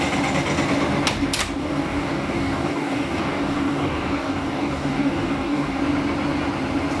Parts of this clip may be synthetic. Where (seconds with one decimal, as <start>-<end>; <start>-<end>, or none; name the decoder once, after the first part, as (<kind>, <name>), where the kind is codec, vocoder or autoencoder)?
1.6-5.8 (codec, DAC)